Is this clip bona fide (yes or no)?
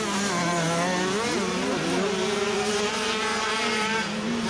yes